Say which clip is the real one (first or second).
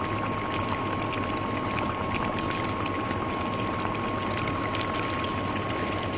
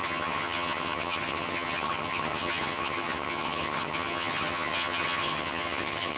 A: first